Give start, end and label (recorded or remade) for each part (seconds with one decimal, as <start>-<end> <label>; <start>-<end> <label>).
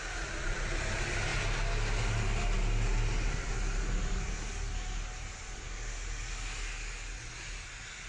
0.0-8.1 recorded